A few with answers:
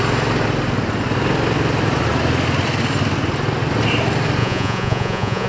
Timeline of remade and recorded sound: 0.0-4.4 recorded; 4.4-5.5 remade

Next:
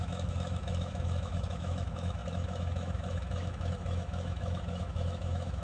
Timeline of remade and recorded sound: 0.0-5.6 remade

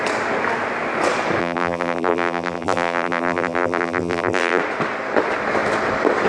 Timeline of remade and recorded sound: 0.0-1.4 recorded; 1.4-4.6 remade; 4.6-6.3 recorded

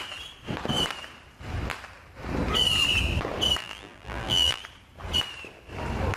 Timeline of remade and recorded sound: 0.0-3.6 recorded; 3.6-4.6 remade; 4.6-6.2 recorded

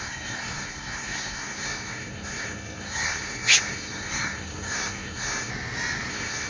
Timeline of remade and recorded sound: 0.0-5.5 remade; 5.5-6.1 recorded; 6.1-6.5 remade